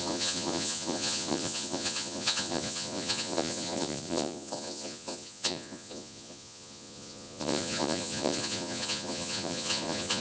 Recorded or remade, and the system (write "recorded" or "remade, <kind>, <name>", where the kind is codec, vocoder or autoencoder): remade, vocoder, Vocos